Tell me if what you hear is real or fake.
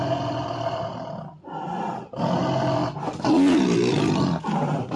real